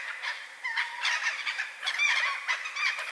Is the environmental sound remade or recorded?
recorded